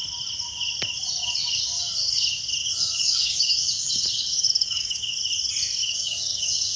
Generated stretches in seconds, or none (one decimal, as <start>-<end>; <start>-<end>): 2.6-5.0; 5.8-6.8